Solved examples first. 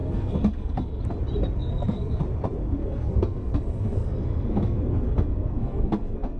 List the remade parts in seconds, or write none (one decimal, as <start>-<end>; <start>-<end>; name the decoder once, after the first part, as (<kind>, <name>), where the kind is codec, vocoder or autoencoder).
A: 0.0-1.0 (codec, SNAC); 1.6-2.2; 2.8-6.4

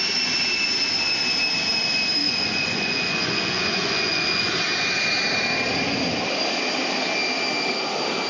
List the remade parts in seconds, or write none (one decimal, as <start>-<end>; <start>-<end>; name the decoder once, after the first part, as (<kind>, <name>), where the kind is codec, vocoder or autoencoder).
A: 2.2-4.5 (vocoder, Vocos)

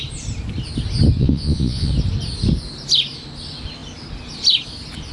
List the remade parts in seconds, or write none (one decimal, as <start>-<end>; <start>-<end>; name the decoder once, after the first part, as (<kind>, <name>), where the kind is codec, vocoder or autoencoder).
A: 1.2-1.9 (vocoder, Vocos)

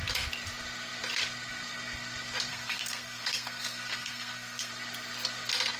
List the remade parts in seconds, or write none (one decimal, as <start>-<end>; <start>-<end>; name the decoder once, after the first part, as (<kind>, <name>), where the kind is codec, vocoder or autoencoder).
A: 2.5-4.7 (codec, SNAC)

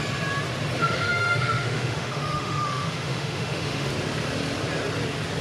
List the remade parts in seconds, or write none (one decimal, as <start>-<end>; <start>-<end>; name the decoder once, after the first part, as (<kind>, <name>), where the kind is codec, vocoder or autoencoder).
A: 0.8-3.9 (autoencoder, DAC-VAE)

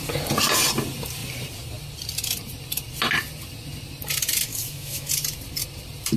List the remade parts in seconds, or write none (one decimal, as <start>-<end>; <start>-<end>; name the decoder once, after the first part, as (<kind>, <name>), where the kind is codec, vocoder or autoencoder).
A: 4.5-5.1 (autoencoder, DAC-VAE)